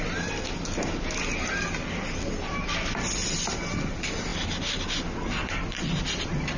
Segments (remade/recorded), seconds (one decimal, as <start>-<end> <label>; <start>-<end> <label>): 0.0-6.6 recorded